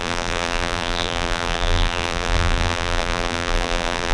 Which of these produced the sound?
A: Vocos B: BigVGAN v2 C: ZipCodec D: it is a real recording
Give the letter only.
B